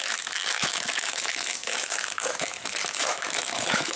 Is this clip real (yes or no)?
no